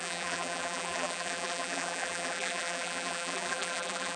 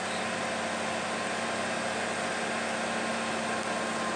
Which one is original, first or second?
second